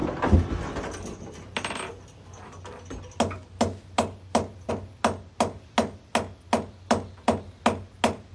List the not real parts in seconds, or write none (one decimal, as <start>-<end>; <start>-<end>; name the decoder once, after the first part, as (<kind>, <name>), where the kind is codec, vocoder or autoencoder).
none